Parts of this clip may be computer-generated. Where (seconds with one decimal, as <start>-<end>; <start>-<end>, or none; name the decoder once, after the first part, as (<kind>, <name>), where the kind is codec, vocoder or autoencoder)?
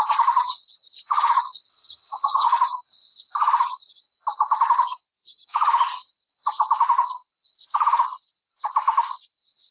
1.7-2.5 (vocoder, HiFi-GAN)